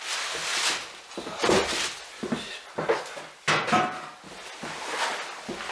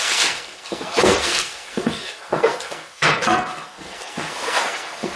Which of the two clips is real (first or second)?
first